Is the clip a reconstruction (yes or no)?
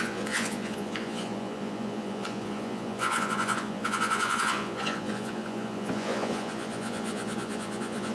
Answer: yes